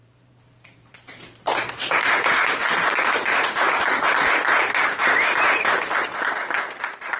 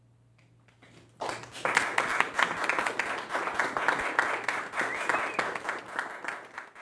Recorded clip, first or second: second